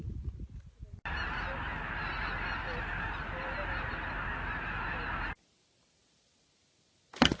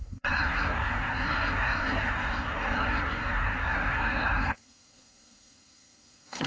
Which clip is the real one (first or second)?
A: first